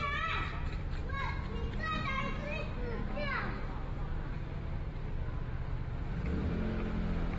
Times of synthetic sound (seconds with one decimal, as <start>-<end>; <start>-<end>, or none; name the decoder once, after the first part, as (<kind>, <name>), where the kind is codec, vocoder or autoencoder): none

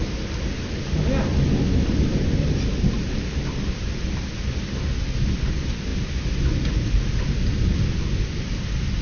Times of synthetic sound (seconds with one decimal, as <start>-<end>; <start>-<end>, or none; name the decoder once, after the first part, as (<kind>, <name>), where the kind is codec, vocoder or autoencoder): none